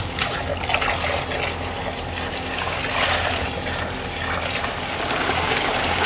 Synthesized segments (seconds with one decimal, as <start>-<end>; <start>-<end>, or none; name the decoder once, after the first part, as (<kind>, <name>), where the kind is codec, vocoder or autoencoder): 0.0-0.5 (codec, DAC); 2.3-2.8; 5.1-6.1